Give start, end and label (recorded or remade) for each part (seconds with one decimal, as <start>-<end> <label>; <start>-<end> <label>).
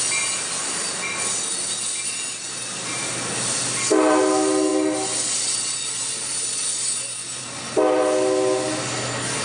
0.0-9.4 recorded